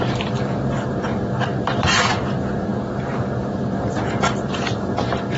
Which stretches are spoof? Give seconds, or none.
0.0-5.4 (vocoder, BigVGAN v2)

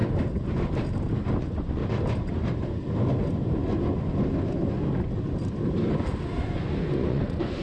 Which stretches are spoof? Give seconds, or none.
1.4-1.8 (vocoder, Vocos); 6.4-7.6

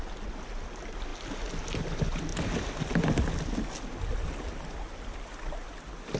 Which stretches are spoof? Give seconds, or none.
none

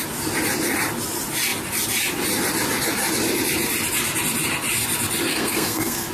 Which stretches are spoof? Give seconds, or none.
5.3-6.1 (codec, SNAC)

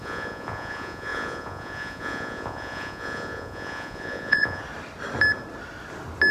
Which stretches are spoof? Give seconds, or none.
0.0-4.6 (vocoder, Vocos)

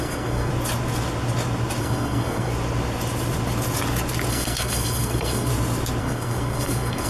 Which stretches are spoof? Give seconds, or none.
0.0-0.5 (codec, SNAC); 1.8-2.5; 4.3-5.5; 6.0-7.1

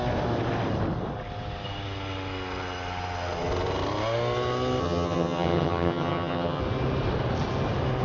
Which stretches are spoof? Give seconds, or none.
4.8-6.6 (vocoder, HiFi-GAN)

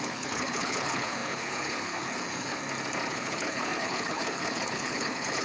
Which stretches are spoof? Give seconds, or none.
0.0-2.6 (codec, HILCodec); 3.1-5.4